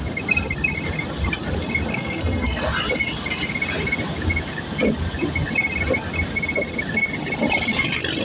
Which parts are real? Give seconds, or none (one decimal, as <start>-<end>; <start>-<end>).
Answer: 0.0-1.9; 2.7-8.2